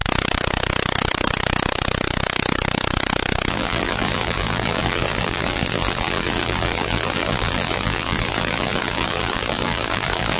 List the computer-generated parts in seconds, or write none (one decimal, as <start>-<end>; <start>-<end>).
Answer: 3.5-10.4